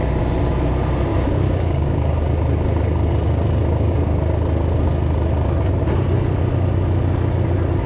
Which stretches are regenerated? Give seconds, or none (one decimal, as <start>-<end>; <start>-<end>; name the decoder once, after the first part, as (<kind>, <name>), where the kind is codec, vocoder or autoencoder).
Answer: 1.1-2.2 (codec, DAC)